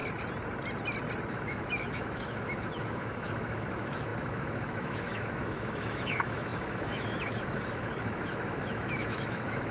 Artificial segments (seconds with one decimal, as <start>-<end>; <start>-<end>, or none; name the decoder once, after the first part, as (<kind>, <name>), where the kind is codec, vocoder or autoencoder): 1.3-9.7 (autoencoder, DAC-VAE)